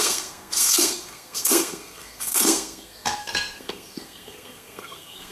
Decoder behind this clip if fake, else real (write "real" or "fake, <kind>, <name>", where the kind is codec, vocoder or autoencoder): fake, codec, SNAC